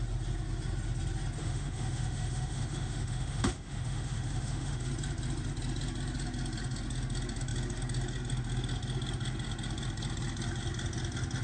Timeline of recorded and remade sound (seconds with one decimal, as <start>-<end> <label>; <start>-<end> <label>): 0.0-1.4 recorded; 1.4-4.9 remade; 4.9-11.4 recorded